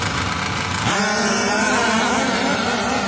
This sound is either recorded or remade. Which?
remade